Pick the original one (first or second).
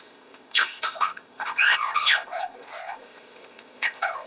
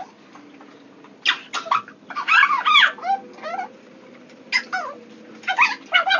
second